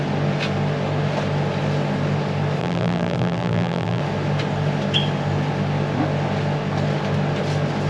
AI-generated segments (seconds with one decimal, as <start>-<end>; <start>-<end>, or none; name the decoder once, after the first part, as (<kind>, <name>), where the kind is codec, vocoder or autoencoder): 2.6-4.0 (vocoder, BigVGAN v2)